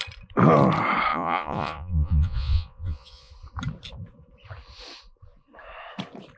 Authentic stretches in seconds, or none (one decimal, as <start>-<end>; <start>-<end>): 0.0-1.1; 3.3-6.4